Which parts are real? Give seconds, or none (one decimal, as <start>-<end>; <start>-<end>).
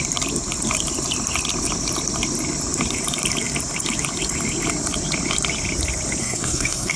0.0-6.2